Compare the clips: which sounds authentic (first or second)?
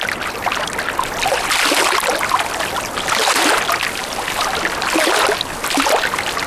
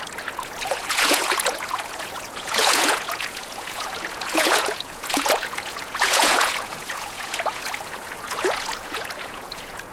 first